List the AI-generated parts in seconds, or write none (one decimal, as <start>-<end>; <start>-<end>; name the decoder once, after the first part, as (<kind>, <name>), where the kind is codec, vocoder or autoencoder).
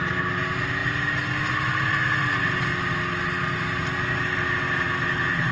none